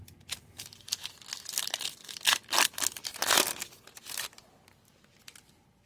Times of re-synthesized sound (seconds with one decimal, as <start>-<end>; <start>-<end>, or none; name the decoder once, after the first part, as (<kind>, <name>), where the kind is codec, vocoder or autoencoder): none